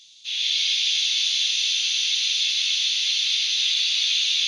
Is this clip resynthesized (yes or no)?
yes